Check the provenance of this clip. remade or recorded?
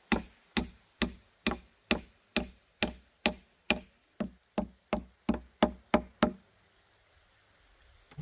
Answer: recorded